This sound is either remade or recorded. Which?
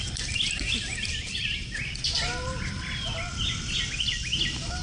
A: recorded